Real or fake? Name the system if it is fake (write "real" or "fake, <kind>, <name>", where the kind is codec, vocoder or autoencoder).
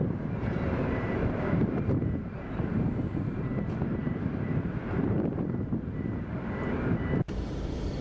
fake, vocoder, BigVGAN v2